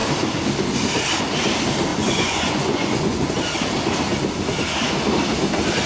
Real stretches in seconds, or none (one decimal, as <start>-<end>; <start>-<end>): 0.0-1.9; 3.3-5.9